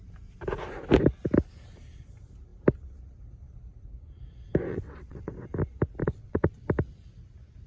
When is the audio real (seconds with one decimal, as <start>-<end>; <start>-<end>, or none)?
0.0-4.7; 5.3-6.0; 6.6-7.7